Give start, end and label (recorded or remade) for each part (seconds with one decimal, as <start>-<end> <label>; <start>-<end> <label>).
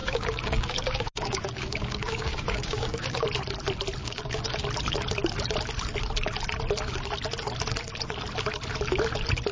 0.0-3.2 remade; 3.2-4.0 recorded; 4.0-4.6 remade; 4.6-9.5 recorded